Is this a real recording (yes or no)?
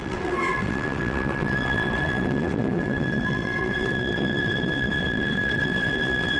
no